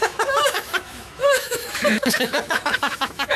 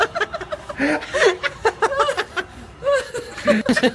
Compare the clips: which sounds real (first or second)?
second